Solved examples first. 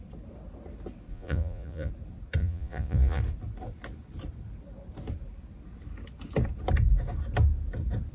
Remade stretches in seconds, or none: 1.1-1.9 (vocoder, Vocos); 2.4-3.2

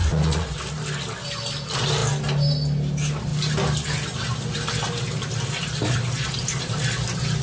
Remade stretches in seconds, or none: 0.0-0.6 (vocoder, Vocos)

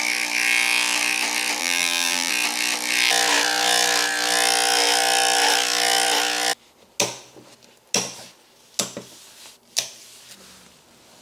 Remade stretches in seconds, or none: 1.6-2.3 (vocoder, BigVGAN v2)